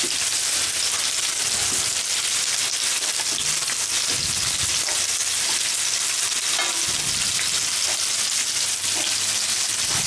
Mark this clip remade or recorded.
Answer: recorded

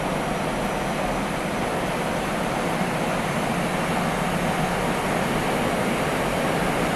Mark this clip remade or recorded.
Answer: recorded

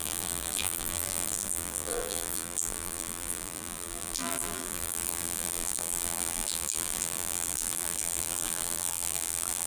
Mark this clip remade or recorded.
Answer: remade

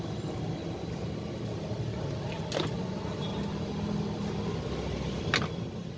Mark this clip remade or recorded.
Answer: recorded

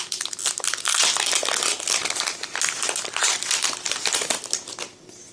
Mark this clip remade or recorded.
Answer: recorded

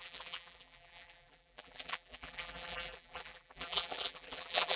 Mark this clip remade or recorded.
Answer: remade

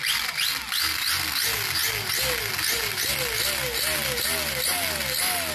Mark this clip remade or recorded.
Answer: recorded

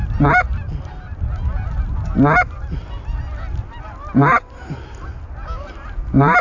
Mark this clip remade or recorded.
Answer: recorded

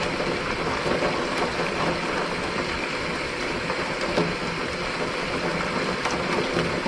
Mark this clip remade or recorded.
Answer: recorded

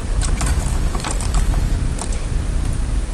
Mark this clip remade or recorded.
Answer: remade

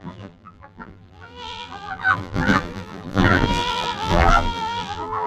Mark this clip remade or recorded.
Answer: remade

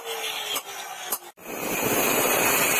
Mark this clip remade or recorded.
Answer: recorded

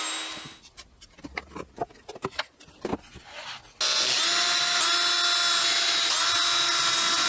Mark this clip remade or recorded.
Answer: recorded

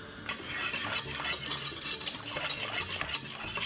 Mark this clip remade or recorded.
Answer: recorded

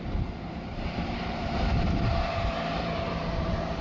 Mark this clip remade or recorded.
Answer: remade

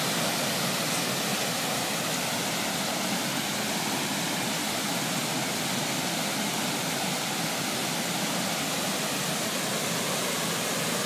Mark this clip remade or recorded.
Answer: recorded